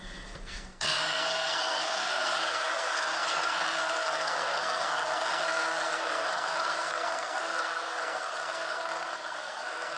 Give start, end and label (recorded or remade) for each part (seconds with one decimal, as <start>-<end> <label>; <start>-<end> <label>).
0.0-10.0 remade